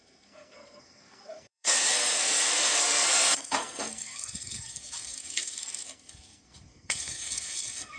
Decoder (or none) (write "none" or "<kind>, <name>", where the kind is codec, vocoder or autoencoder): codec, SNAC